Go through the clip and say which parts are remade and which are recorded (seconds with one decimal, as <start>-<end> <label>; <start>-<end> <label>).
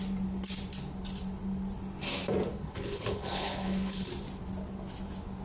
0.0-2.5 recorded; 2.5-4.1 remade; 4.1-5.4 recorded